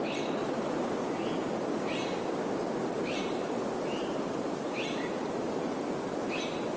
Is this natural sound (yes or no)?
yes